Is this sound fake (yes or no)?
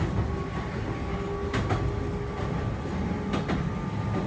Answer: no